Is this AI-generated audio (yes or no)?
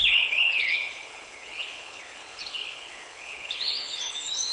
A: yes